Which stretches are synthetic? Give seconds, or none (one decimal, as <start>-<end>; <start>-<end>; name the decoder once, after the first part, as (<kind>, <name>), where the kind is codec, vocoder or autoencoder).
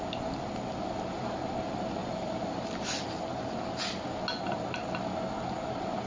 none